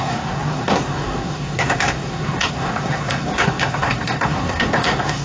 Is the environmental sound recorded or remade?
remade